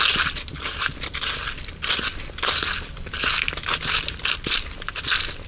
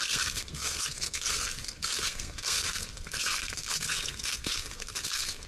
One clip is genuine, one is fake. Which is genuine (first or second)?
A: first